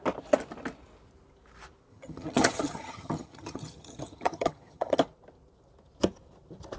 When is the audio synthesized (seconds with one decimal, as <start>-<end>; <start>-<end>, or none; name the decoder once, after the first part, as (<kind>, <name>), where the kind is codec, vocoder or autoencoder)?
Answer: 1.9-5.0 (vocoder, HiFi-GAN)